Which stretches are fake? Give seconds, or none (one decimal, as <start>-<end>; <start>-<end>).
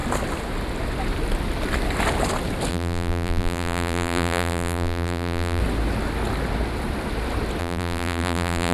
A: 2.7-5.6; 7.6-8.7